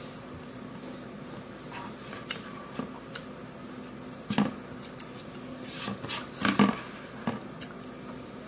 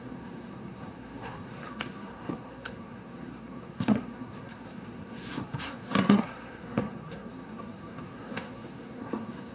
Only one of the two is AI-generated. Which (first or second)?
second